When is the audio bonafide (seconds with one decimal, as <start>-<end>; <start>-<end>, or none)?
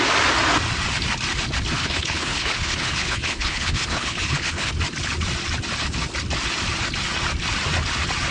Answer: 0.0-1.8; 4.7-8.3